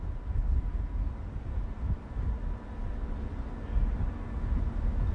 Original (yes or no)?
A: yes